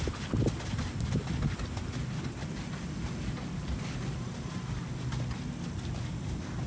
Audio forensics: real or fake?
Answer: real